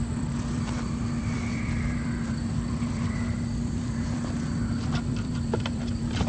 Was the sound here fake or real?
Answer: fake